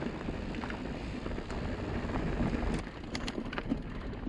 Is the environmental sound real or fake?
real